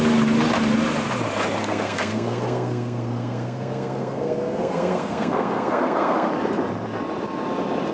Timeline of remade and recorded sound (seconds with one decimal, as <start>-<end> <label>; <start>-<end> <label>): 0.0-1.6 recorded; 1.6-6.3 remade; 6.3-7.9 recorded